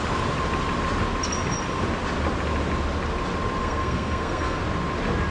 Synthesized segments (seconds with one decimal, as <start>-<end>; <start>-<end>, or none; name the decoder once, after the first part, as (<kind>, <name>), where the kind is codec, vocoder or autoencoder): 3.6-4.6 (codec, SNAC)